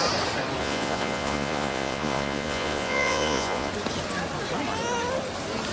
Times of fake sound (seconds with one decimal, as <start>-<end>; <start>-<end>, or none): 0.6-3.7